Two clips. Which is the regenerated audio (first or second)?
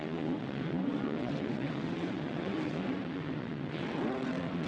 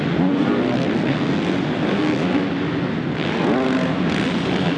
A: first